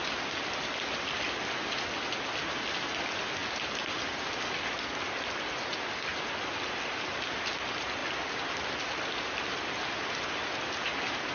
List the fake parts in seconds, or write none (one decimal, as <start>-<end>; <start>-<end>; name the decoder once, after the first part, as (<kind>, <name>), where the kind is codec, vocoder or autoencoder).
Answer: none

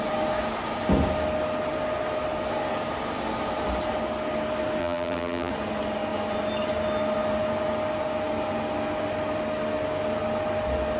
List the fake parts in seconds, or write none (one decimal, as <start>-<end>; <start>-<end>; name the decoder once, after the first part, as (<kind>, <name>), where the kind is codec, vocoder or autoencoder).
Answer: 4.8-5.5 (vocoder, BigVGAN v2)

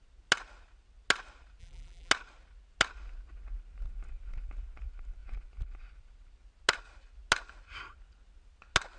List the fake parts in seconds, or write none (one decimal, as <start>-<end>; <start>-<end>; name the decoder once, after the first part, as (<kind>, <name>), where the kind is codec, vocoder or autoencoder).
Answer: 1.6-2.1 (vocoder, BigVGAN v2)

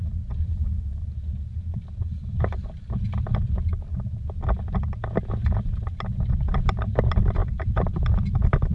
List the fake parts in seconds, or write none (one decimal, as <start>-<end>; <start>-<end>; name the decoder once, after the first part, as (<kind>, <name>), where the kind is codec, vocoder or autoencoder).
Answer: 7.4-8.2 (vocoder, BigVGAN v2)

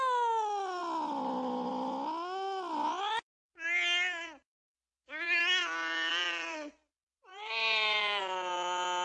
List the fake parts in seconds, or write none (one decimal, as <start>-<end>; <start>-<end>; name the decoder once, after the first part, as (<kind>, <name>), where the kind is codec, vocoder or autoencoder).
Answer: 6.1-8.2 (vocoder, BigVGAN v2)